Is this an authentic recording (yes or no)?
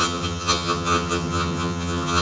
no